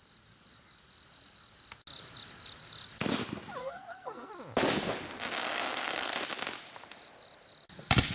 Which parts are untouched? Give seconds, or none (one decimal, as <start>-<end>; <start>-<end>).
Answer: 0.0-3.6; 4.3-5.4; 6.2-8.1